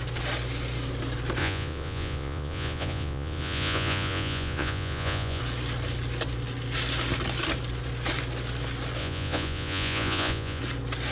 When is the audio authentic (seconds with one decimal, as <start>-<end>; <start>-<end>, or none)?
0.0-1.4; 5.4-9.0; 10.6-11.1